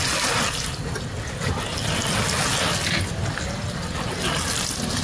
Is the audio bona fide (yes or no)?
yes